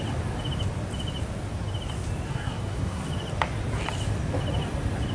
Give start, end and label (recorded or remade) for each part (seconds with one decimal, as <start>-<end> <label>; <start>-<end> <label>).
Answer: 0.0-2.3 recorded; 2.3-3.0 remade; 3.0-5.1 recorded